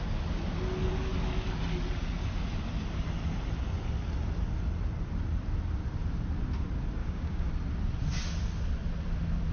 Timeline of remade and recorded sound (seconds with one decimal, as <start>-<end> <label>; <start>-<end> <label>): 0.0-7.0 recorded; 7.0-7.5 remade; 7.5-9.5 recorded